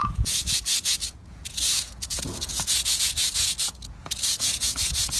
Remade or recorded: remade